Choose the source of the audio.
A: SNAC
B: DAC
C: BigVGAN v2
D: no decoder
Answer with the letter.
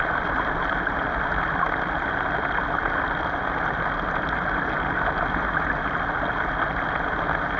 D